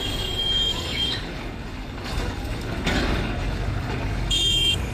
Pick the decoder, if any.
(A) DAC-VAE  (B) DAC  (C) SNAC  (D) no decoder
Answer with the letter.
B